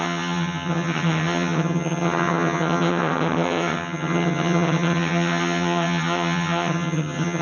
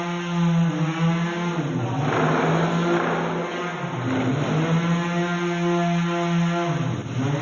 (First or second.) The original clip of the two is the second